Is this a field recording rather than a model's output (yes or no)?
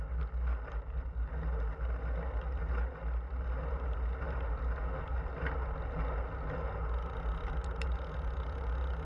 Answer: yes